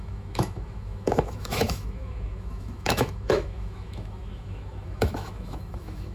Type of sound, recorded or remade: remade